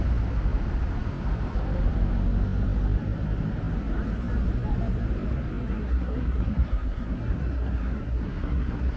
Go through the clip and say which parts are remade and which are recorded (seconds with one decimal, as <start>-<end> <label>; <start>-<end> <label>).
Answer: 0.0-5.6 recorded; 5.6-9.0 remade